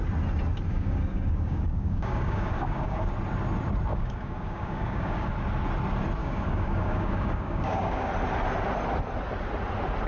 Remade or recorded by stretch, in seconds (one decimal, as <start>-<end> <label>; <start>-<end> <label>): 0.0-0.7 recorded; 0.7-3.1 remade; 3.1-3.9 recorded; 3.9-5.3 remade; 5.3-6.2 recorded; 6.2-8.1 remade; 8.1-10.1 recorded